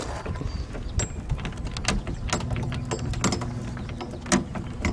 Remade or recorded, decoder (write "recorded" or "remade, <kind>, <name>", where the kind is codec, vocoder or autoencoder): recorded